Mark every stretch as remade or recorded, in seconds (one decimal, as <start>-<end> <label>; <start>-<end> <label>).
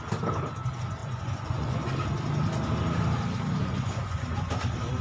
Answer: 0.0-1.0 recorded; 1.0-1.9 remade; 1.9-3.6 recorded; 3.6-4.5 remade; 4.5-5.0 recorded